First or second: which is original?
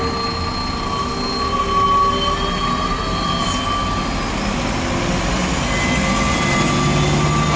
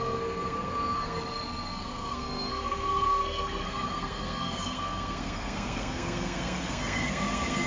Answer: first